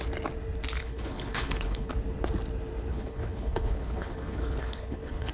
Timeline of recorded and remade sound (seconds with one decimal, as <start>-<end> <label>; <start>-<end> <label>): 0.0-0.8 recorded; 0.8-1.9 remade; 1.9-2.9 recorded; 2.9-5.3 remade